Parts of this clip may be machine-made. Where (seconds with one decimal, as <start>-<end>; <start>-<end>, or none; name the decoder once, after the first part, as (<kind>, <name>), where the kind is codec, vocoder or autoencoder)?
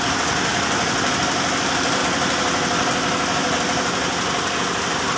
0.5-1.1 (vocoder, BigVGAN v2)